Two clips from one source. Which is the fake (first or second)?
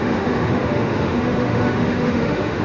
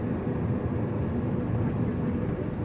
first